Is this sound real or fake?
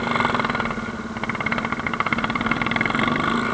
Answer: real